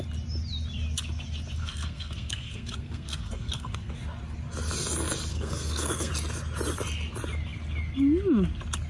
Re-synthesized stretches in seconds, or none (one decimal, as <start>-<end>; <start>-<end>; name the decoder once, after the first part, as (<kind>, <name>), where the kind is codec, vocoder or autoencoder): 1.6-3.9 (codec, SNAC); 5.3-6.1